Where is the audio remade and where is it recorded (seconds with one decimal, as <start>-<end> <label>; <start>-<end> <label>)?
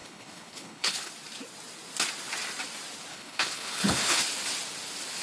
0.0-1.1 remade; 1.1-3.1 recorded; 3.1-4.2 remade; 4.2-5.2 recorded